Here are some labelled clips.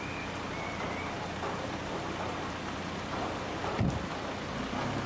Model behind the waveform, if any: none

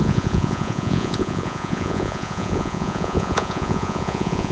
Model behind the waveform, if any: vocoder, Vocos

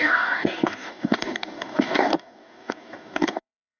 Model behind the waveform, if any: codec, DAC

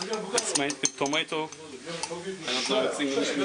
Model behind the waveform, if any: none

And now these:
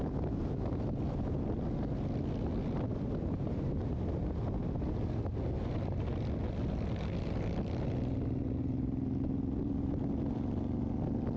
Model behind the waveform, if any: none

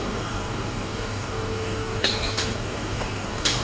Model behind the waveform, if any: codec, DAC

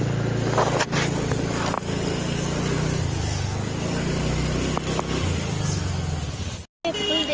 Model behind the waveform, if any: none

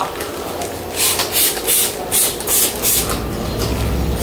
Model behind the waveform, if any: vocoder, BigVGAN v2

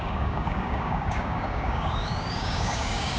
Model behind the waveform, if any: codec, DAC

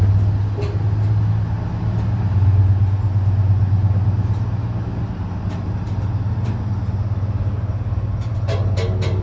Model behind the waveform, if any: none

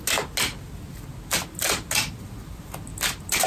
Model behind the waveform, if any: none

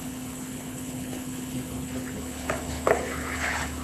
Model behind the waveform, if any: codec, HILCodec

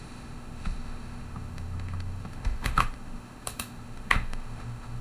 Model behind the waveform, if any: autoencoder, DAC-VAE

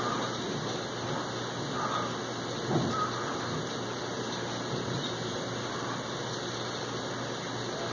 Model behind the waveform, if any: none